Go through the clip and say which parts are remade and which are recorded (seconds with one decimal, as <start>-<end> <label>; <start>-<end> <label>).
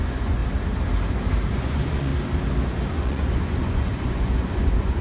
0.0-0.4 remade; 0.4-1.5 recorded; 1.5-2.1 remade; 2.1-2.9 recorded; 2.9-5.0 remade